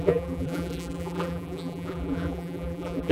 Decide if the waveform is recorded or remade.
remade